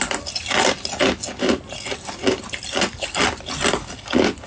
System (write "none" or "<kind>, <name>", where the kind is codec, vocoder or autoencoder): none